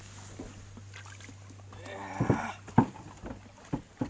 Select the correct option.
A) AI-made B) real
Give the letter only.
B